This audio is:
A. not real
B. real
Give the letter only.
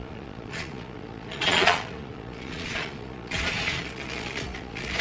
A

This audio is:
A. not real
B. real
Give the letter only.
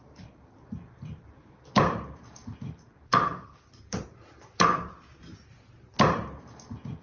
B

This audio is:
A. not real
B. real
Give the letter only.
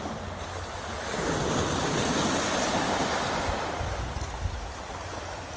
B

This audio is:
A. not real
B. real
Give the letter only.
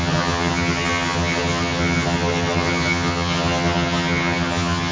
A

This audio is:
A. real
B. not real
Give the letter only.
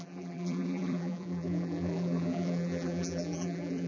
B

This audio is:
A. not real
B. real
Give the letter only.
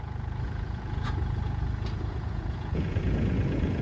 A